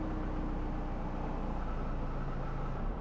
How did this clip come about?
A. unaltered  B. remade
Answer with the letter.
A